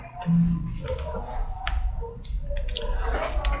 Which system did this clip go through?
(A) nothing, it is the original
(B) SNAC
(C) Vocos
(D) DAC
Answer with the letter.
A